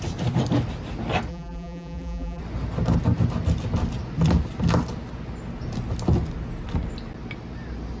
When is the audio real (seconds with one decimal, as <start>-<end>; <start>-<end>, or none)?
0.0-1.3; 2.4-8.0